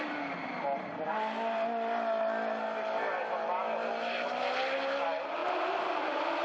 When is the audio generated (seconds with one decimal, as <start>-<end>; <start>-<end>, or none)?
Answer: none